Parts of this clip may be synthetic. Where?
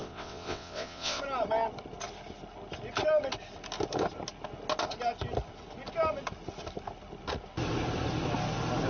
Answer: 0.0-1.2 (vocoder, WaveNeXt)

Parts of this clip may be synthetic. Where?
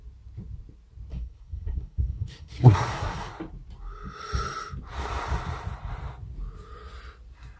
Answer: 1.1-3.3 (codec, SNAC)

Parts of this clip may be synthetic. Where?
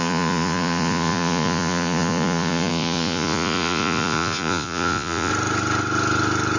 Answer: 0.0-5.3 (vocoder, Vocos)